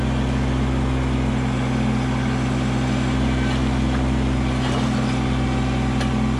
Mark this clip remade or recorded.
recorded